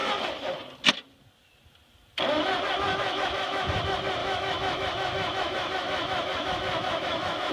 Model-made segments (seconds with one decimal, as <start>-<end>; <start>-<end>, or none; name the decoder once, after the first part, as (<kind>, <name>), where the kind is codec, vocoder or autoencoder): 2.9-3.8 (autoencoder, DAC-VAE); 4.2-7.5